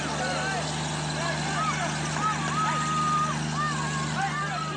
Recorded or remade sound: recorded